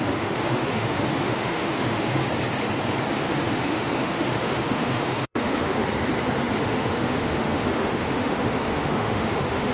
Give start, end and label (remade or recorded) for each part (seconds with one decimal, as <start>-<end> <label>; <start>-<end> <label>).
0.0-2.2 remade; 2.2-3.1 recorded; 3.1-5.8 remade; 5.8-6.6 recorded; 6.6-9.7 remade